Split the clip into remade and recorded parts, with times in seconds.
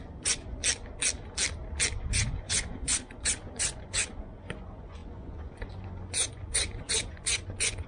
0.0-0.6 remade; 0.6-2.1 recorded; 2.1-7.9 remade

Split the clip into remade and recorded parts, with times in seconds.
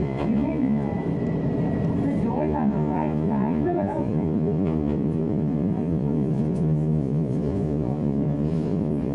0.0-0.9 remade; 0.9-2.3 recorded; 2.3-9.1 remade